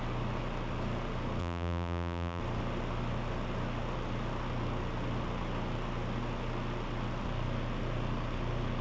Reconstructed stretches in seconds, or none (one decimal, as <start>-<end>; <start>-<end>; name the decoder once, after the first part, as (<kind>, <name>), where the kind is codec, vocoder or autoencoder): 1.4-2.4 (vocoder, BigVGAN v2)